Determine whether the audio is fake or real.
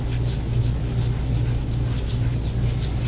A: real